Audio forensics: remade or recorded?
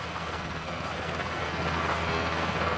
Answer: remade